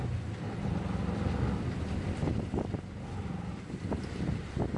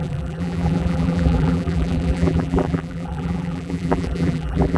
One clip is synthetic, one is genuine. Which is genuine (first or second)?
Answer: first